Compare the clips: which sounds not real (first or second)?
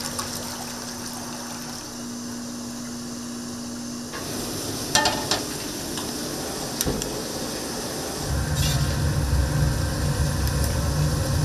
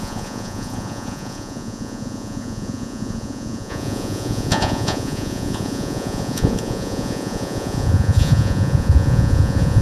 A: second